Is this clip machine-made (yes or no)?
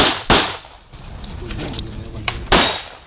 no